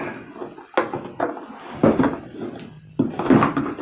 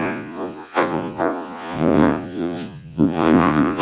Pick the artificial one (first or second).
second